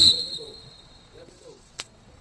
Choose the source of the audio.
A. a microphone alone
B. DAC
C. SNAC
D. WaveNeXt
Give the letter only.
D